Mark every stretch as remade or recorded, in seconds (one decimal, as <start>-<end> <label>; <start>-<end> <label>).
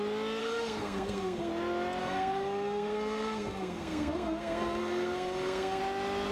0.0-0.4 recorded; 0.4-1.5 remade; 1.5-2.0 recorded; 2.0-5.8 remade; 5.8-6.3 recorded